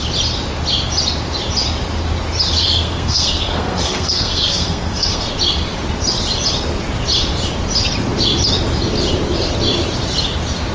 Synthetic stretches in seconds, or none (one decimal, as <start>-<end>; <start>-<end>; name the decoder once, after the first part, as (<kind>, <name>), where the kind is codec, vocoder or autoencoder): 2.6-5.3 (codec, SNAC)